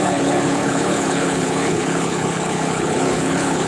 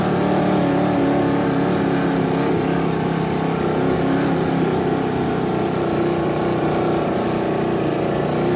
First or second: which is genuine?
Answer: second